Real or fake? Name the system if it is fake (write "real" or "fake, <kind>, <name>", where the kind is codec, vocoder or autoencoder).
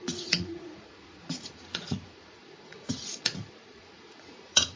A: fake, vocoder, Vocos